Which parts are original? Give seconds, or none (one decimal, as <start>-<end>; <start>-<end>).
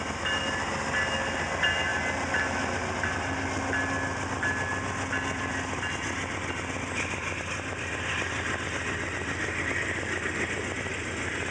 0.0-11.5